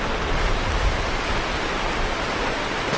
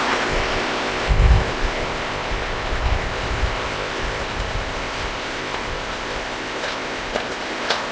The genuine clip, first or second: first